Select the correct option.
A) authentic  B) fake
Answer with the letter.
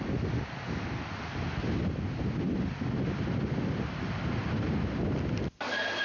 A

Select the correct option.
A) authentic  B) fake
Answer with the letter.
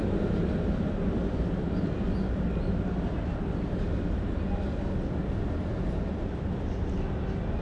A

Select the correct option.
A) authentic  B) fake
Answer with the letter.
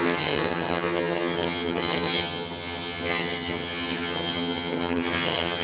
B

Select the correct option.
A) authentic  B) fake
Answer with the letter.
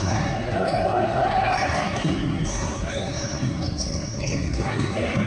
B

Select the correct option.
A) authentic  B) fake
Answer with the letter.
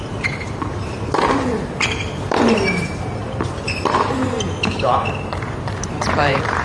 B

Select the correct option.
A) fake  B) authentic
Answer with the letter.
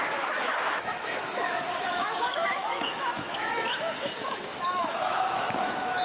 A